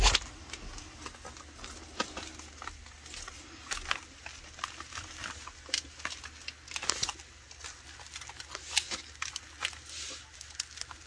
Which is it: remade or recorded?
recorded